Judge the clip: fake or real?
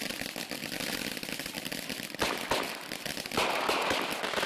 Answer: real